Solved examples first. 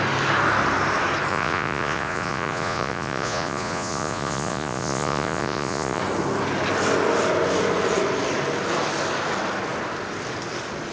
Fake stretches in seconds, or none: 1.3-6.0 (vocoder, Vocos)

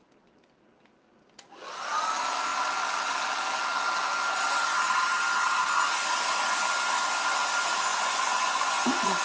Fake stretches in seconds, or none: 7.9-9.2 (vocoder, Vocos)

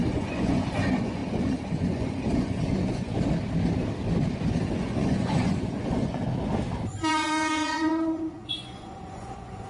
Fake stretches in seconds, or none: 0.0-3.1 (vocoder, Vocos); 4.5-6.2; 7.1-9.7

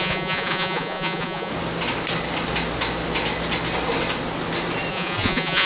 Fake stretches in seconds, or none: 0.0-1.5 (vocoder, Vocos); 4.9-5.7

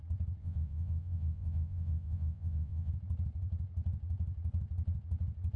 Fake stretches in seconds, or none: 0.4-2.9 (vocoder, Vocos)

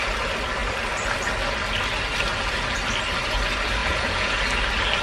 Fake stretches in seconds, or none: 3.8-4.4 (vocoder, Vocos)

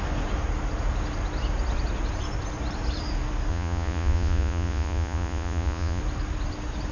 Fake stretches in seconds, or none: 3.5-6.0 (vocoder, Vocos)

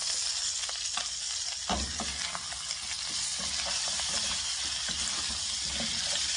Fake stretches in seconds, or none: none